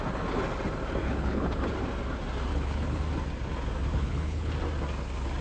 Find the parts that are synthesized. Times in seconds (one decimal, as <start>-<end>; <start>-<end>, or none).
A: 1.0-1.7; 2.5-3.0; 3.9-4.5